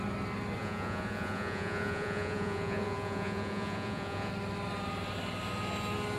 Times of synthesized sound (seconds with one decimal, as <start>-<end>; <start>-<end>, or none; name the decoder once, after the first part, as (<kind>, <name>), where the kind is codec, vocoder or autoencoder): 0.6-4.3 (vocoder, Vocos)